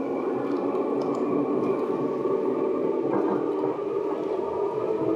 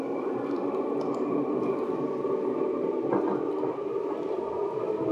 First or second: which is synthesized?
second